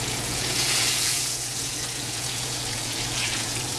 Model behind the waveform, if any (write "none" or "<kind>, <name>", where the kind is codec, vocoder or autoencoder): vocoder, Vocos